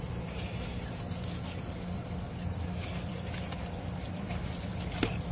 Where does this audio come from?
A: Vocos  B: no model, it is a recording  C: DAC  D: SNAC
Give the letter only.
B